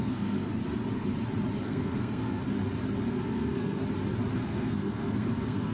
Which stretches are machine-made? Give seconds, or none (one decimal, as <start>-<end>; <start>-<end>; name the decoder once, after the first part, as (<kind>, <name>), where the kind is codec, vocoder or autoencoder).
0.0-0.5 (codec, SNAC); 1.6-2.4; 3.1-3.8; 4.3-5.7